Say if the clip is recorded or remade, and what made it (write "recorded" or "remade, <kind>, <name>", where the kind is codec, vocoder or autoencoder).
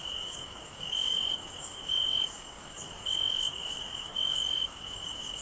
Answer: remade, codec, DAC